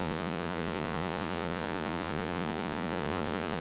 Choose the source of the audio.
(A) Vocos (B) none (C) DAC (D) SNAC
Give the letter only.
A